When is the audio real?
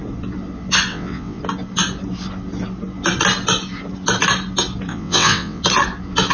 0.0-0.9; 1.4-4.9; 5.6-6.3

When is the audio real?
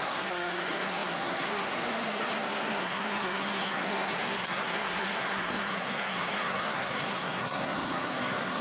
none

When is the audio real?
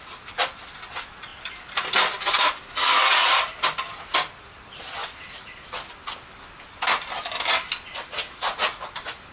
0.0-9.3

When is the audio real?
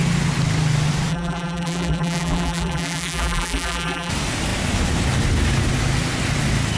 0.0-1.1; 4.1-6.8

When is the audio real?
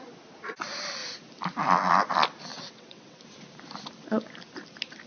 0.0-2.5; 3.2-5.1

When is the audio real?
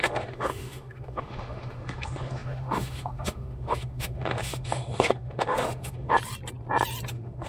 6.1-7.1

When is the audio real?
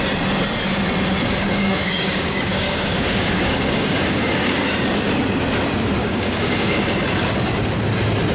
0.0-1.2; 4.7-6.0; 6.8-8.3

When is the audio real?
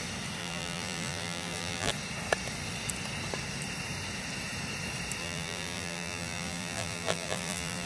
0.0-0.4; 1.9-5.2